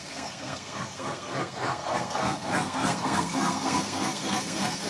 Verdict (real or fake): fake